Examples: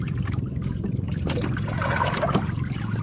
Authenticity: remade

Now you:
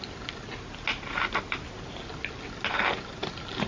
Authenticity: recorded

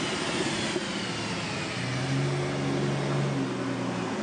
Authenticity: recorded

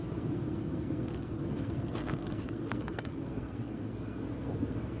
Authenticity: remade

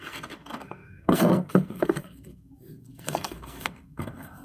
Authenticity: remade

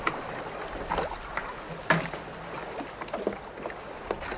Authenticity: recorded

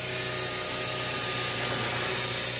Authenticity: recorded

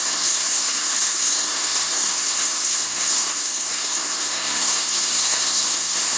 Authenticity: remade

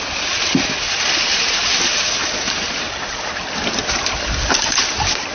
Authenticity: recorded